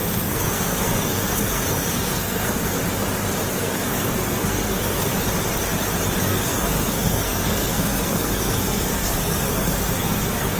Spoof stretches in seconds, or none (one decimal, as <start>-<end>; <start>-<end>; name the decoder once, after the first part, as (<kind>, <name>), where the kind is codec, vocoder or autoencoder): 0.0-2.8 (codec, SNAC); 3.5-5.1; 6.2-10.6